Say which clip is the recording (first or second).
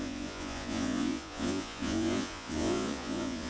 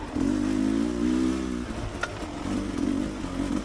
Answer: second